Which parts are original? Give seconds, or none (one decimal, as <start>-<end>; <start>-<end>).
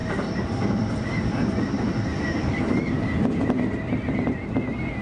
0.0-5.0